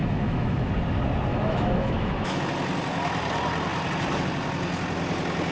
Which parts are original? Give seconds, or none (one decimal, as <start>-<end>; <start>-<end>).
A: 0.7-1.3; 2.4-5.5